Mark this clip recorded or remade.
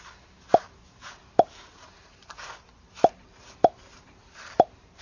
remade